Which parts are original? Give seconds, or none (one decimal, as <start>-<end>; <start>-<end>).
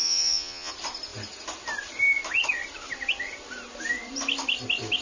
0.7-5.0